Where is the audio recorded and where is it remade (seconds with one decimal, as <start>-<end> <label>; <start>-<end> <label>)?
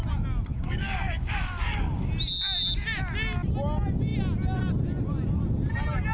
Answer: 0.0-0.5 recorded; 0.5-2.1 remade; 2.1-6.1 recorded